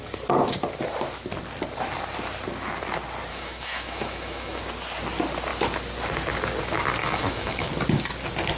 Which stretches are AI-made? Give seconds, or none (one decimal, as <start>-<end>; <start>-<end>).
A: 3.3-4.6; 7.0-7.7